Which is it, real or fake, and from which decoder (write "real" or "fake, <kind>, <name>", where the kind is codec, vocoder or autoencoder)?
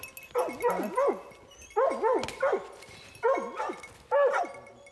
real